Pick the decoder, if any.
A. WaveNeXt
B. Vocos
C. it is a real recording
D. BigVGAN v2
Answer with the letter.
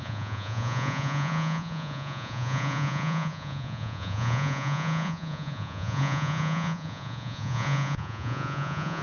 B